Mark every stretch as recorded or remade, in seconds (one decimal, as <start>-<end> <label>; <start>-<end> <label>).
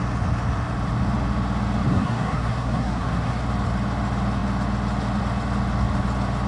0.0-1.9 recorded; 1.9-3.4 remade; 3.4-6.5 recorded